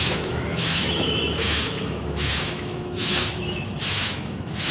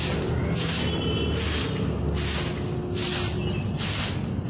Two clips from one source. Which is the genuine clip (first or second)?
second